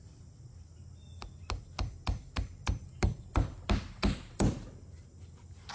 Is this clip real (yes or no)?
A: yes